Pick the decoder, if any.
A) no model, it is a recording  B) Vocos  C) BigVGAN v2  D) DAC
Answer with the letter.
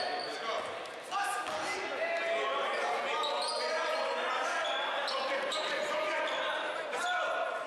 A